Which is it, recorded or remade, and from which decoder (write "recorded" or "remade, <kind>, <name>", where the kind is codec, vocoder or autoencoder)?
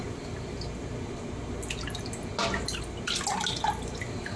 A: recorded